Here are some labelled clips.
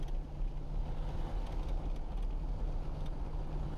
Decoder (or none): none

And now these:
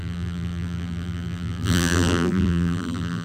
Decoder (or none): vocoder, BigVGAN v2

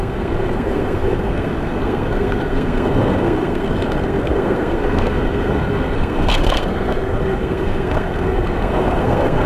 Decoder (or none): codec, SNAC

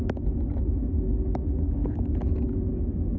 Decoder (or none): none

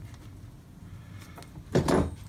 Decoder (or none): none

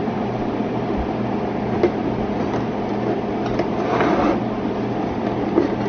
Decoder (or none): none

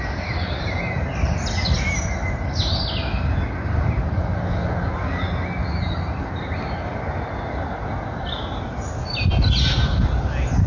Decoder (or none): none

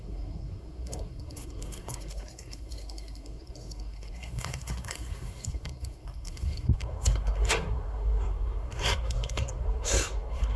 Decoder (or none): codec, SNAC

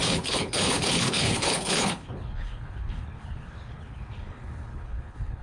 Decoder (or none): codec, HILCodec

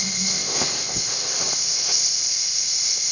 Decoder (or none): codec, ZipCodec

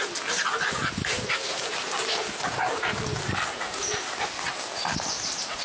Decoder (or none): none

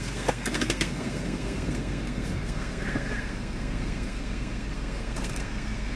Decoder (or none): codec, SNAC